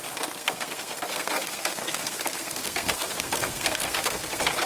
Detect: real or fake fake